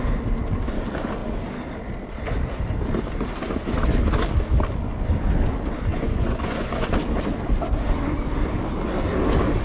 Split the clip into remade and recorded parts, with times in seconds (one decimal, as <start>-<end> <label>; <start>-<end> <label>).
0.0-5.9 recorded; 5.9-6.9 remade; 6.9-9.6 recorded